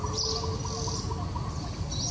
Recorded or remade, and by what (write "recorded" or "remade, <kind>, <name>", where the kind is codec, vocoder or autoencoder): recorded